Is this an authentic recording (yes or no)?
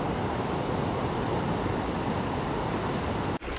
yes